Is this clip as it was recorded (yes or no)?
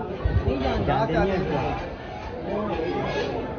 yes